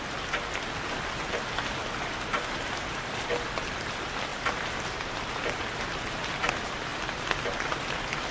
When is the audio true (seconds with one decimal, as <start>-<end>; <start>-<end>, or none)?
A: 0.0-8.3